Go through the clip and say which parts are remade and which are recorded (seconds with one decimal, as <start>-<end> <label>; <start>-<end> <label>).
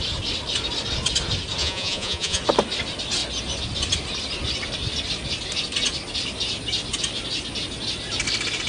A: 0.0-1.6 recorded; 1.6-2.4 remade; 2.4-8.7 recorded